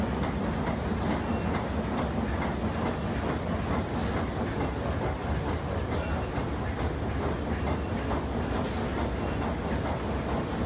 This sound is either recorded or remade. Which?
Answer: recorded